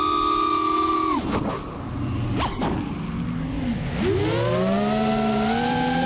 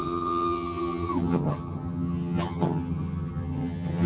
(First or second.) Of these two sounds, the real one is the first